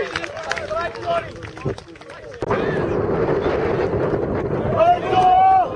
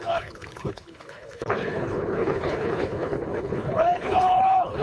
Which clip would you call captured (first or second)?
first